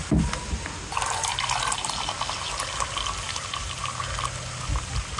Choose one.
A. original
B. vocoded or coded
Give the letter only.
A